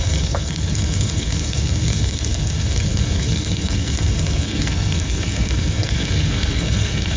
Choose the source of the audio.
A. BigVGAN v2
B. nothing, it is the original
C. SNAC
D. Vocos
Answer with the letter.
C